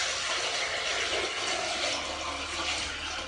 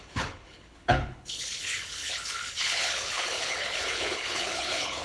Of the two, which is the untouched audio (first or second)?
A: first